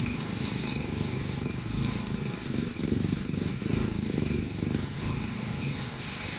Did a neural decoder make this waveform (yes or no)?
yes